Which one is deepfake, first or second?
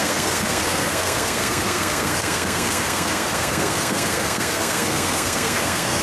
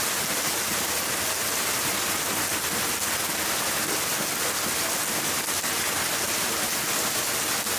first